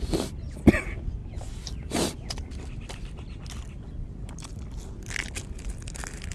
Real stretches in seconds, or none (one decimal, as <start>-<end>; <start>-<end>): 0.0-6.3